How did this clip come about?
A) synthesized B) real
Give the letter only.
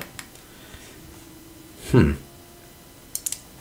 B